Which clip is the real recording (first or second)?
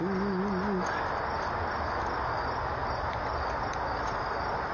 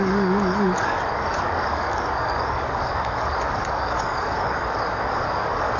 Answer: first